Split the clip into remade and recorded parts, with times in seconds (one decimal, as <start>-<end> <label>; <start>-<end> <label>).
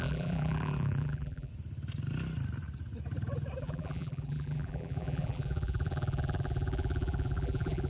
0.0-1.5 remade; 1.5-3.6 recorded; 3.6-7.9 remade